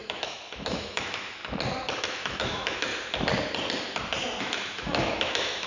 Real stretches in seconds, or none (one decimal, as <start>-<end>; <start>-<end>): 1.4-2.1; 2.9-4.4